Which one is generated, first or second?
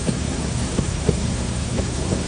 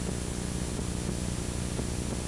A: first